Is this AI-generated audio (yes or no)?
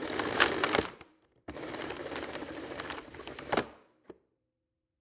yes